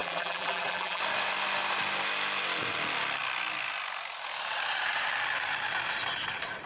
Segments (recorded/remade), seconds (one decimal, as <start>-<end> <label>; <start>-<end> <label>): 0.0-1.0 remade; 1.0-6.7 recorded